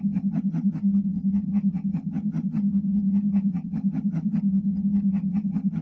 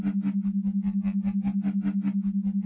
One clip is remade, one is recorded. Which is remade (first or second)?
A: first